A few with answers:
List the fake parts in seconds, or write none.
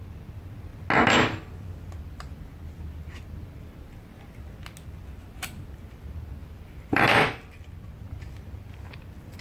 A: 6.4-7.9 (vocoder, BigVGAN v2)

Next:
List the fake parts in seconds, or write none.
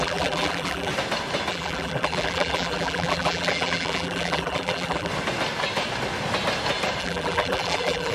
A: 0.0-0.9 (vocoder, BigVGAN v2); 1.5-5.1; 7.0-8.1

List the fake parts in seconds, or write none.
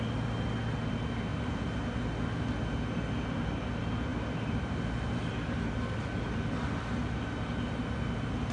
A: none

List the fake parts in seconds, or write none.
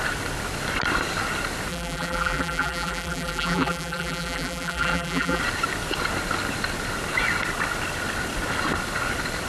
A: 1.7-5.4 (vocoder, BigVGAN v2)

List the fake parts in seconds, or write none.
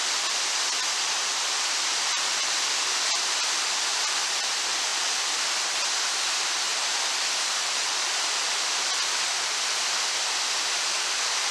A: 0.0-4.9 (vocoder, BigVGAN v2); 6.0-11.5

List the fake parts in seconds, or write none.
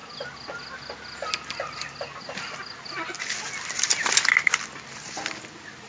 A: none